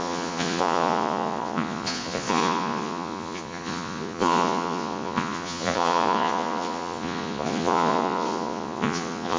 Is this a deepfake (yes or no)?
yes